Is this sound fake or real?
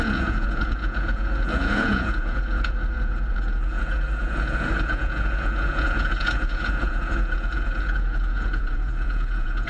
fake